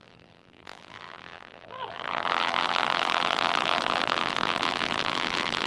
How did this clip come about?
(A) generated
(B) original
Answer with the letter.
A